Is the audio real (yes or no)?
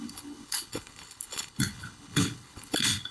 no